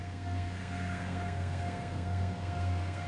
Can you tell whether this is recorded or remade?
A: remade